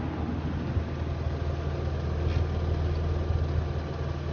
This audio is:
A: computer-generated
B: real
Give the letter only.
B